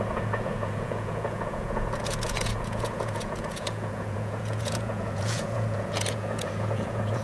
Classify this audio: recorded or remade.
remade